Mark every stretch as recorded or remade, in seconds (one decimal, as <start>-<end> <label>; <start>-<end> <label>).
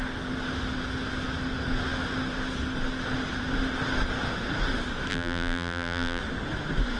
0.0-5.1 recorded; 5.1-6.2 remade; 6.2-7.0 recorded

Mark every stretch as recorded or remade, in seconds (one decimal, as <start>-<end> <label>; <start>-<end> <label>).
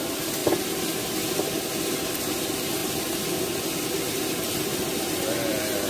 0.0-5.9 recorded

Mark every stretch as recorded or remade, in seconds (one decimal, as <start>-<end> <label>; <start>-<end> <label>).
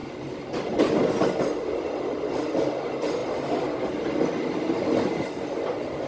0.0-6.1 recorded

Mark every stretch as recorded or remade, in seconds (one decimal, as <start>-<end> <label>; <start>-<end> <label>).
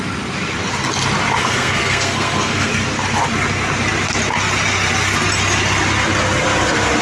0.0-1.4 recorded; 1.4-2.7 remade; 2.7-7.0 recorded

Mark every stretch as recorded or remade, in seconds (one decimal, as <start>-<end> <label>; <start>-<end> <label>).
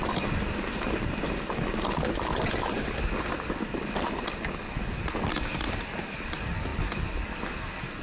0.0-8.0 recorded